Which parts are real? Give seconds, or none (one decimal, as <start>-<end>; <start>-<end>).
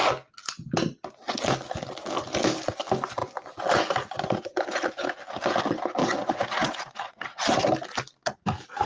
0.0-6.0; 7.4-8.9